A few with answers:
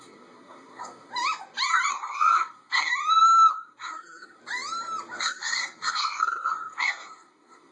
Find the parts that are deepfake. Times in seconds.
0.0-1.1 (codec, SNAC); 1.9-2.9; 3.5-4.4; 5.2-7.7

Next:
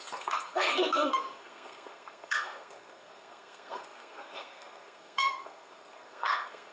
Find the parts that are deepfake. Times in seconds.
0.0-6.7 (codec, SNAC)